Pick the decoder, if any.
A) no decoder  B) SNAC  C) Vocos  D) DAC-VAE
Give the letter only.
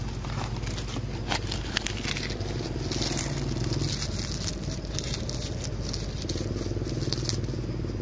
A